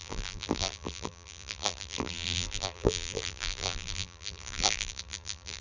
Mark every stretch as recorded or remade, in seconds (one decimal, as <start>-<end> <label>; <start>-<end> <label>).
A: 0.0-5.6 remade